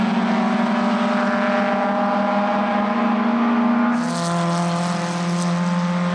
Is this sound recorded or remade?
recorded